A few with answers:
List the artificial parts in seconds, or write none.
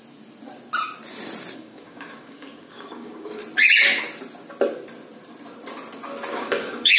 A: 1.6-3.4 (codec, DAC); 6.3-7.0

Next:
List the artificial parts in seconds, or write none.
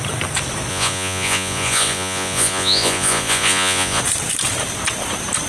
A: 0.7-4.0 (vocoder, Vocos)